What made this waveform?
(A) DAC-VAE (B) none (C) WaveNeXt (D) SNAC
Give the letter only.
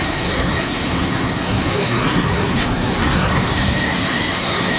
D